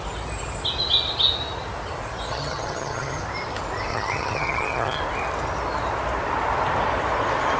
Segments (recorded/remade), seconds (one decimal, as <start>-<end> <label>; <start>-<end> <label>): 0.0-2.3 recorded; 2.3-3.2 remade; 3.2-3.9 recorded; 3.9-5.0 remade; 5.0-7.6 recorded